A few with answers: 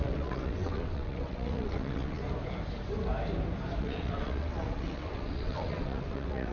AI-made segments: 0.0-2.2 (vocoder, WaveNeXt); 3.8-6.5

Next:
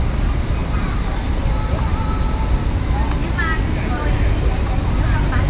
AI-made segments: none

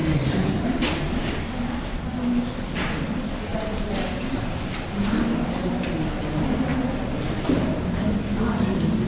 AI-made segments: 0.0-1.8 (vocoder, BigVGAN v2); 3.5-5.7; 6.7-7.5